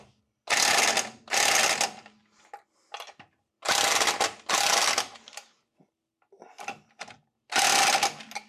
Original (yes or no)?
yes